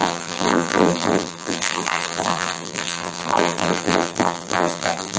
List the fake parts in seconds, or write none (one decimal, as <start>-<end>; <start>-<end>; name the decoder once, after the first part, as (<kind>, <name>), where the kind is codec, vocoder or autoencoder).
0.0-5.2 (vocoder, BigVGAN v2)